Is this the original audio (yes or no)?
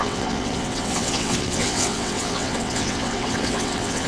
no